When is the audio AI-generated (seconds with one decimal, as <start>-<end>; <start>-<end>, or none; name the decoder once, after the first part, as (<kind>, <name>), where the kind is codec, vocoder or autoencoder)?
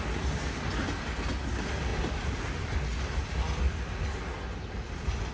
none